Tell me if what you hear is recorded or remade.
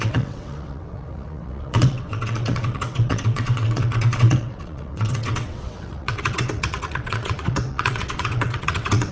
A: remade